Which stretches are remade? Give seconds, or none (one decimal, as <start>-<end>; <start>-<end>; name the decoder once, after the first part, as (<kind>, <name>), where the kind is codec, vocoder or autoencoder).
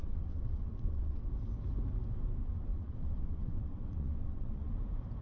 0.0-1.3 (vocoder, WaveNeXt); 2.7-4.7